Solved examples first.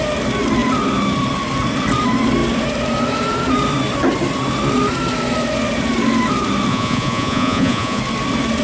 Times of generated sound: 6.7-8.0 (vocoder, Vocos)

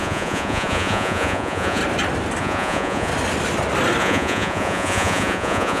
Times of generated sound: 0.0-1.8 (vocoder, Vocos); 2.4-3.1; 4.0-5.8

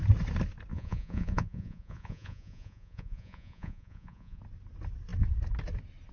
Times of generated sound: 0.7-4.4 (vocoder, Vocos)

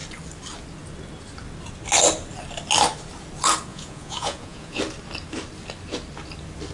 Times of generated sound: 3.7-4.8 (vocoder, Vocos)

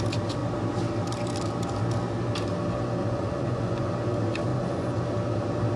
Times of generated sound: 3.0-3.9 (vocoder, Vocos); 4.5-5.0

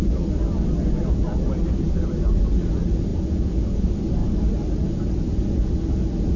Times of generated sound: 3.1-3.8 (vocoder, Vocos)

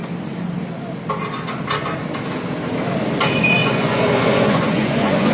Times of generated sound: 3.6-5.3 (vocoder, Vocos)

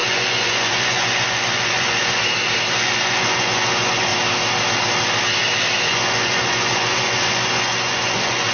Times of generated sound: 0.0-2.2 (vocoder, Vocos); 2.7-4.1; 5.9-8.5